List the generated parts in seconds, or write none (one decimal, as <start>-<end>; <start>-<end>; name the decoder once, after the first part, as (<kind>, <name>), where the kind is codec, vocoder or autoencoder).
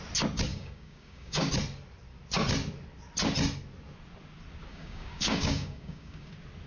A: 0.5-1.5 (codec, DAC); 4.7-6.3